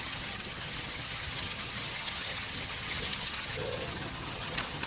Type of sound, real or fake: fake